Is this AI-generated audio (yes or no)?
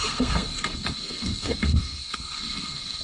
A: yes